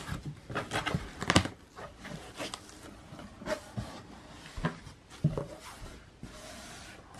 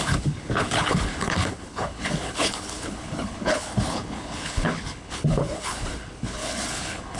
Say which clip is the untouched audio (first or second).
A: first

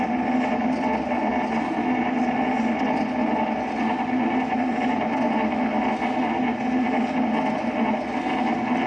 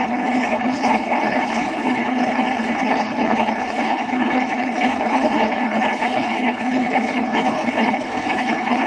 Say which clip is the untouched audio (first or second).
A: first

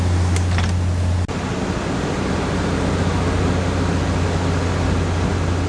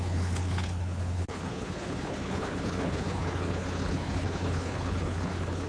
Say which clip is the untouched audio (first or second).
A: first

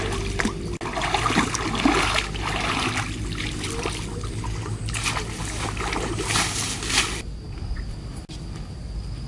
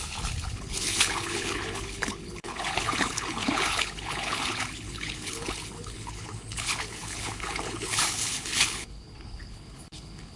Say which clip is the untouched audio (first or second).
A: first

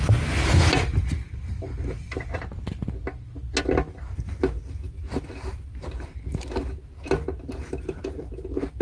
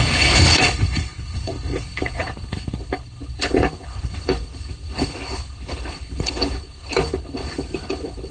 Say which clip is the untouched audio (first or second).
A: first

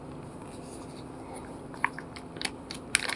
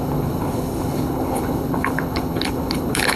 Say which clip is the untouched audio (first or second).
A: first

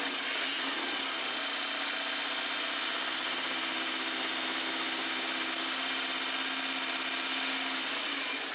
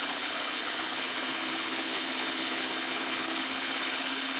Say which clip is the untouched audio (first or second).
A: first